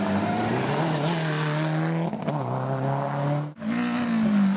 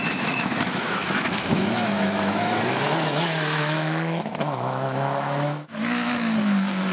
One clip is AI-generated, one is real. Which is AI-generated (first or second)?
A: second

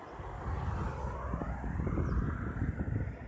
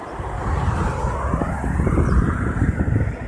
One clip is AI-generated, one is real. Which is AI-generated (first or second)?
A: second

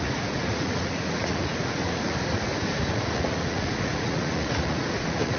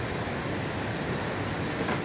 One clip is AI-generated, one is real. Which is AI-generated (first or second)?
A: first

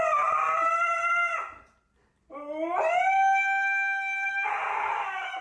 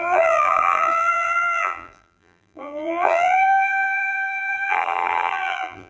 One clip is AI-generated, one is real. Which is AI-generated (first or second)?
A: second